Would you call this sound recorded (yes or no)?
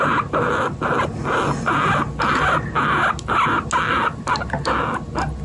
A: yes